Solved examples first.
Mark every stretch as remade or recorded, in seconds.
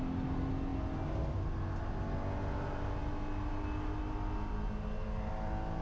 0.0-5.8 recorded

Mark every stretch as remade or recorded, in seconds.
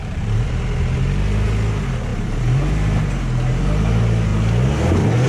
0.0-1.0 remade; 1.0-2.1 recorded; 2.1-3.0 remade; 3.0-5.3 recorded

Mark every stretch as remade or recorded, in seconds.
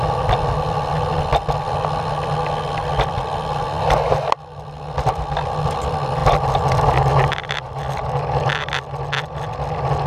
0.0-10.1 recorded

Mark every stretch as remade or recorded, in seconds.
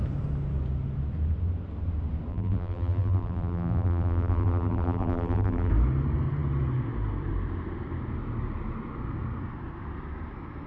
0.0-2.3 recorded; 2.3-5.7 remade; 5.7-10.7 recorded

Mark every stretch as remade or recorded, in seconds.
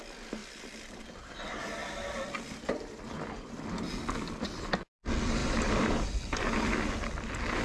0.0-0.4 recorded; 0.4-1.3 remade; 1.3-5.4 recorded; 5.4-6.4 remade; 6.4-7.6 recorded